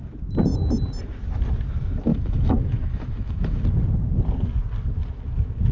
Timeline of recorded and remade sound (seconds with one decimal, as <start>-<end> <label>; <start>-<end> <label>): 0.0-2.1 recorded; 2.1-3.6 remade; 3.6-5.7 recorded